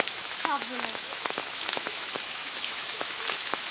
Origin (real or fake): fake